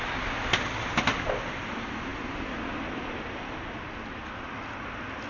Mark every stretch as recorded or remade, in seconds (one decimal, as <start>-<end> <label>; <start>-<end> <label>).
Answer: 0.0-5.3 recorded